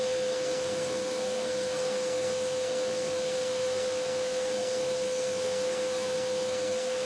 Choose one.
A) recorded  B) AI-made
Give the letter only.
B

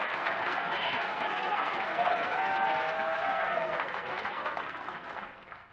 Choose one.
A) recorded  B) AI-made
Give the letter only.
B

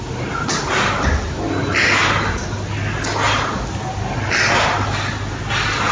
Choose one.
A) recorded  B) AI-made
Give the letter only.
A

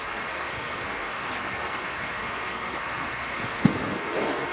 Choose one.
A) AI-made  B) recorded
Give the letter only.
A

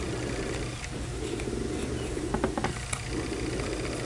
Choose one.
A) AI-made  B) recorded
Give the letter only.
B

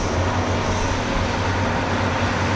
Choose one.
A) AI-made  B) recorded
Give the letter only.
B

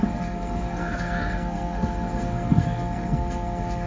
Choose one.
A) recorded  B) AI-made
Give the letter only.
B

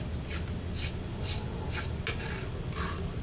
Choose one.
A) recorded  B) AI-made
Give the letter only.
A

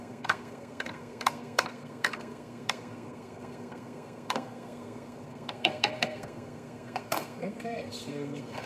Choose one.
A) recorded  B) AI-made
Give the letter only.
B